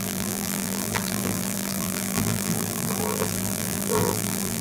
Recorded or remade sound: remade